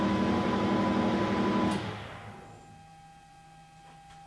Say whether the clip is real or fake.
real